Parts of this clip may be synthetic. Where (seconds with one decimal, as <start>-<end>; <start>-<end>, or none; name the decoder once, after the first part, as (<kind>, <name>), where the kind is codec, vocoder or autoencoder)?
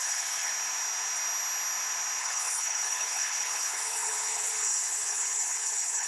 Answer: 0.0-0.5 (codec, HILCodec); 2.2-6.1